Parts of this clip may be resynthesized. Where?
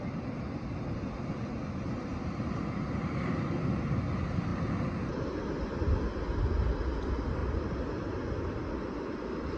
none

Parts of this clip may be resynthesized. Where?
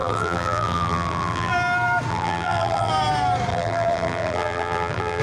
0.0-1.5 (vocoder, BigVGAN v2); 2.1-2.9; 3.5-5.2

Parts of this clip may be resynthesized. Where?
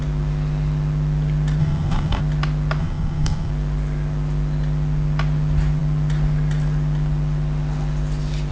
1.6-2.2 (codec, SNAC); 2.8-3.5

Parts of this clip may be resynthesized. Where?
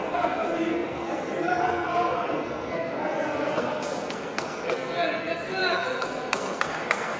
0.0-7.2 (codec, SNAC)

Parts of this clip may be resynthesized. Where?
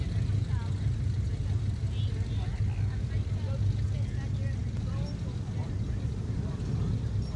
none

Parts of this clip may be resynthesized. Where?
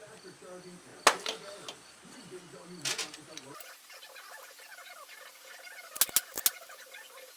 none